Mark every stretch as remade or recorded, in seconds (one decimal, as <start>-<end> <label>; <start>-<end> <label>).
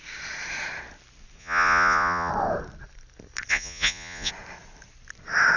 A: 0.0-1.4 recorded; 1.4-2.3 remade; 2.3-3.5 recorded; 3.5-4.3 remade; 4.3-5.6 recorded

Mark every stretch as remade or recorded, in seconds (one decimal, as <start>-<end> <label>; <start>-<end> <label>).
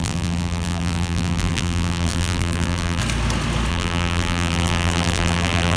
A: 0.0-3.0 remade; 3.0-3.7 recorded; 3.7-5.8 remade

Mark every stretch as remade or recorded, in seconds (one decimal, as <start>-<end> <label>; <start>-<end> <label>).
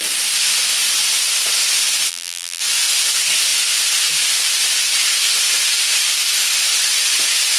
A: 0.0-2.1 recorded; 2.1-2.6 remade; 2.6-7.6 recorded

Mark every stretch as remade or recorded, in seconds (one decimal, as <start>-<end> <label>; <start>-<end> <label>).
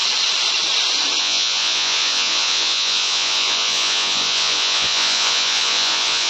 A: 0.0-1.2 recorded; 1.2-6.3 remade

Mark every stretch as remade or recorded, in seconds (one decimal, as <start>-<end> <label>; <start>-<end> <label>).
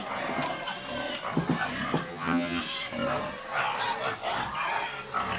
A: 0.0-2.1 recorded; 2.1-2.6 remade; 2.6-5.4 recorded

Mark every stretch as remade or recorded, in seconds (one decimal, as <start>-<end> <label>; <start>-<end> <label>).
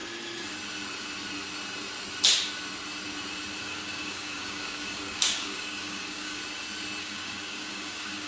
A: 0.0-3.6 recorded; 3.6-6.4 remade; 6.4-7.0 recorded; 7.0-8.3 remade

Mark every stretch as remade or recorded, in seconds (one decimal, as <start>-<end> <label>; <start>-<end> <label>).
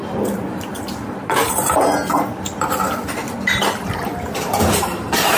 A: 0.0-5.4 remade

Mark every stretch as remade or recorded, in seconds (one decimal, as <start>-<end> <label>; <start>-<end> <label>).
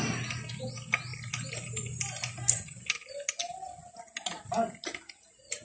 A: 0.0-5.6 recorded